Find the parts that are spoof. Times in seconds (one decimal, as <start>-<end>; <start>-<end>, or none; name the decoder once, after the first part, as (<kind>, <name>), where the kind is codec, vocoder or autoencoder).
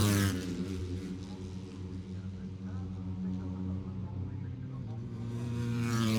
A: 4.0-6.2 (vocoder, BigVGAN v2)